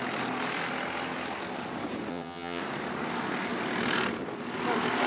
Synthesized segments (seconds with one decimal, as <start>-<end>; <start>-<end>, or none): 2.1-2.6